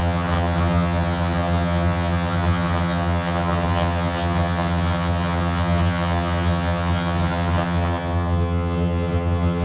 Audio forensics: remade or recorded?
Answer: remade